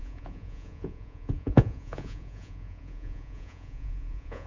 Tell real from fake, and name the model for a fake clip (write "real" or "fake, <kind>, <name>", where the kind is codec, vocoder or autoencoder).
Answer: fake, vocoder, Vocos